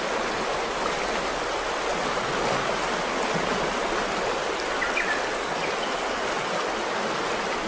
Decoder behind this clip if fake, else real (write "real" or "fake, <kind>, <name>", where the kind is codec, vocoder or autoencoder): real